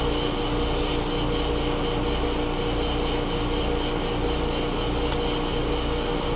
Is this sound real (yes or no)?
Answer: yes